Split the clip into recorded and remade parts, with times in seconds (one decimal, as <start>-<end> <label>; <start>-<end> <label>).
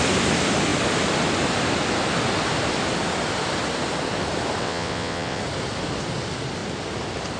0.0-4.6 recorded; 4.6-5.4 remade; 5.4-7.4 recorded